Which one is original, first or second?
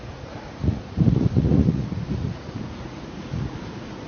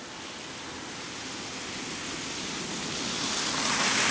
second